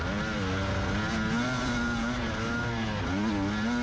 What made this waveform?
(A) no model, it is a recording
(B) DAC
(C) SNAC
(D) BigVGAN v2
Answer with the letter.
A